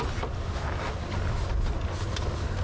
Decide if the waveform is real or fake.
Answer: real